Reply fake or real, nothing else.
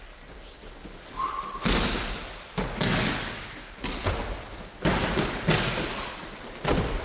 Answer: real